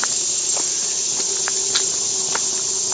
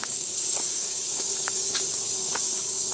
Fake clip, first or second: second